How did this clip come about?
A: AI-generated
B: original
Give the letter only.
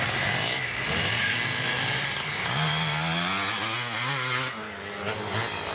B